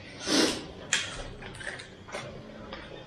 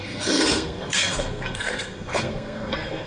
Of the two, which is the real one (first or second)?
first